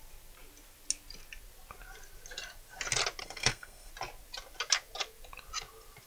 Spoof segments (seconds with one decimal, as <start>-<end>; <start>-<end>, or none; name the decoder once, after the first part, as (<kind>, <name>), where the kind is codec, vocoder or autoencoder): 3.2-3.9 (codec, SNAC)